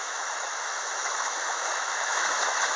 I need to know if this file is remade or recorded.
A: remade